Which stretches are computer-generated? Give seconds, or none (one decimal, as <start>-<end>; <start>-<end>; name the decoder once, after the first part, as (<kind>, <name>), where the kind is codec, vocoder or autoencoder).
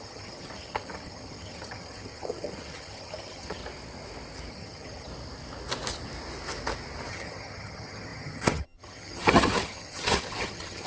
0.0-3.6 (vocoder, HiFi-GAN); 4.5-5.1; 7.1-10.9